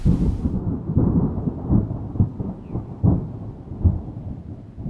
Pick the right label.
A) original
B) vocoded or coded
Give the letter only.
A